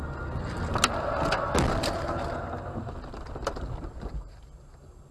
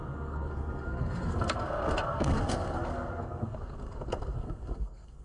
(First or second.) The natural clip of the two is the first